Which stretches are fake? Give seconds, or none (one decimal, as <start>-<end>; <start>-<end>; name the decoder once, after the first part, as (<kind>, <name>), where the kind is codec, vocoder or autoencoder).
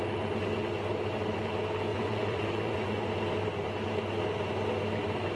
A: 1.9-3.1 (vocoder, Vocos)